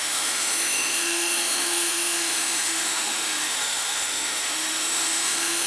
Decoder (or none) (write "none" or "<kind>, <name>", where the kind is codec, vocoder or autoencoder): autoencoder, DAC-VAE